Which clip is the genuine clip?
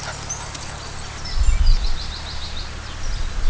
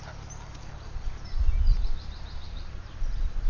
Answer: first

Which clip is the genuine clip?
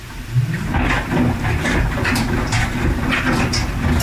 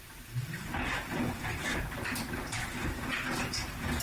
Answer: first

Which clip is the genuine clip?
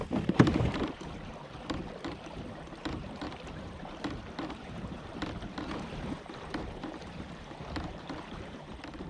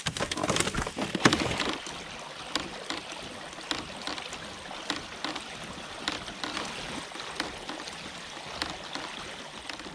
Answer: second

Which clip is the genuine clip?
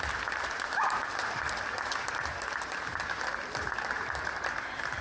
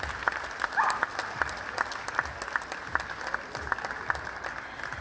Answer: second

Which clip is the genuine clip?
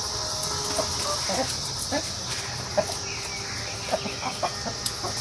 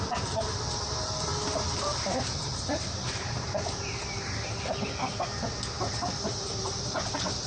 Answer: first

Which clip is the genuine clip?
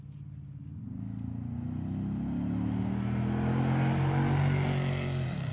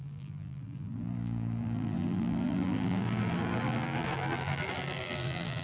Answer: first